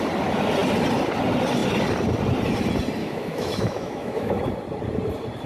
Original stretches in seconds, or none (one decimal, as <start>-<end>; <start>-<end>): 0.0-3.0; 4.4-5.5